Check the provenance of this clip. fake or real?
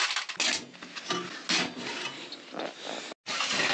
real